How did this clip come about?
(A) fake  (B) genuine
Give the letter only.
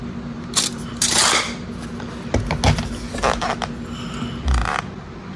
B